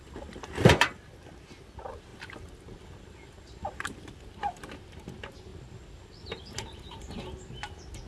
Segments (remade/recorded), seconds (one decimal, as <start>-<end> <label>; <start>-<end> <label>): 0.0-8.1 recorded